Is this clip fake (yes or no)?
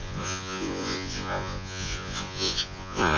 yes